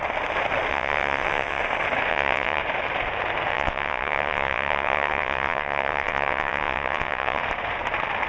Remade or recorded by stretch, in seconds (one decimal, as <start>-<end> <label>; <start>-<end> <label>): 0.0-0.7 recorded; 0.7-1.6 remade; 1.6-2.1 recorded; 2.1-2.6 remade; 2.6-3.5 recorded; 3.5-7.4 remade; 7.4-8.3 recorded